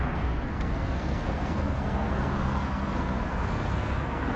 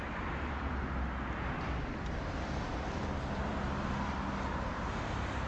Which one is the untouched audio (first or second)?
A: second